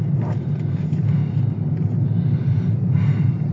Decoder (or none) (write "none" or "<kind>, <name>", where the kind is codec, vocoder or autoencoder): none